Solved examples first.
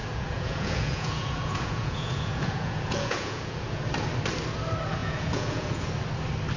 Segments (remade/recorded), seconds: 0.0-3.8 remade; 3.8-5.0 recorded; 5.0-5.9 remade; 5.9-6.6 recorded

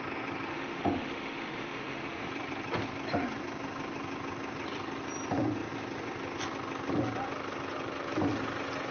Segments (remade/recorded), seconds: 0.0-0.5 recorded; 0.5-2.3 remade; 2.3-8.9 recorded

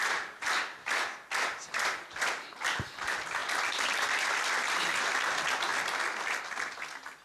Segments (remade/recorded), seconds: 0.0-3.4 recorded; 3.4-4.5 remade; 4.5-5.7 recorded; 5.7-6.5 remade; 6.5-7.2 recorded